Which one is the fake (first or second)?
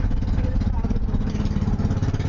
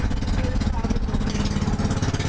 first